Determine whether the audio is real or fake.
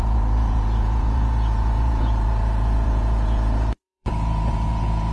fake